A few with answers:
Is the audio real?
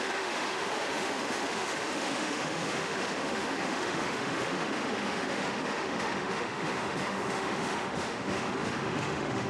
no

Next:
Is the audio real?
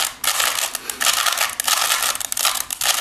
yes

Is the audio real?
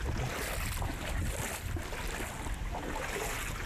yes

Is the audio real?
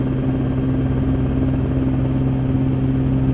yes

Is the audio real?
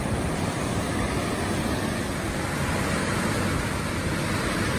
yes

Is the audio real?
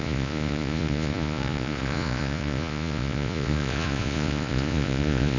no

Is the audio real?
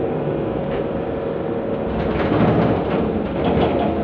yes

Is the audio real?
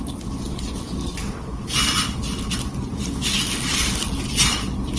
yes